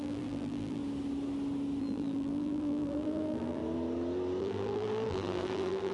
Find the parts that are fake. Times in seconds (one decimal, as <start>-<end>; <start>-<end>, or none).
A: 0.0-0.8; 1.8-3.6; 4.4-5.9

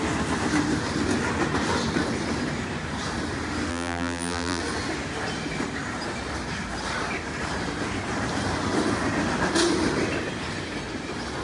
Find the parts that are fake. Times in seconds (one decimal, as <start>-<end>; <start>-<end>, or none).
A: 3.7-4.6

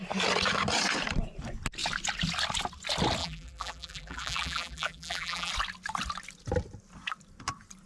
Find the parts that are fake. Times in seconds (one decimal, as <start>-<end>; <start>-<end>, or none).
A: 3.2-5.5